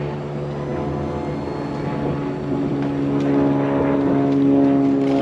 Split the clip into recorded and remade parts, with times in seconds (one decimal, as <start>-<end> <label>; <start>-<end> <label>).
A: 0.0-5.2 recorded